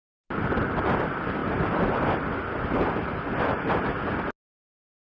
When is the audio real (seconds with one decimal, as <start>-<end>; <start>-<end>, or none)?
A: 0.0-5.1

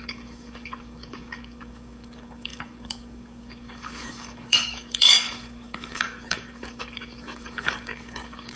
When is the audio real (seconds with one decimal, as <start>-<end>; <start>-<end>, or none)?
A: none

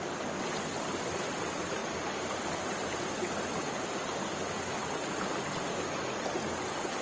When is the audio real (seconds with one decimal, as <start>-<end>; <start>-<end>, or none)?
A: 0.0-7.0

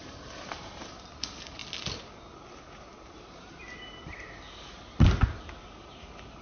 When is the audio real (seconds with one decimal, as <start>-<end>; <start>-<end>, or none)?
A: 1.6-5.4

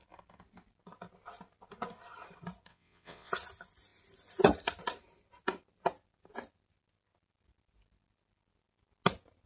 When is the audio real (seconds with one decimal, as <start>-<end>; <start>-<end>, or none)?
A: 0.0-2.7; 3.3-9.5

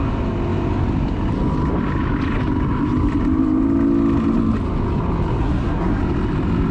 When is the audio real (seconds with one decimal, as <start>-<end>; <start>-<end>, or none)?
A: 0.0-5.4; 6.0-6.7

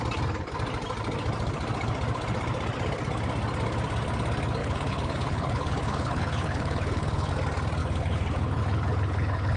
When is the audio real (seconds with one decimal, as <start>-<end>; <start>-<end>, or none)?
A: 0.0-4.6; 7.3-7.8

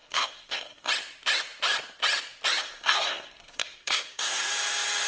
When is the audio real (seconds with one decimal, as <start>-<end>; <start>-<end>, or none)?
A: 0.9-2.6; 4.5-5.1